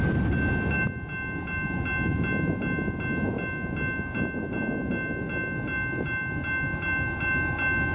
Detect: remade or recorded recorded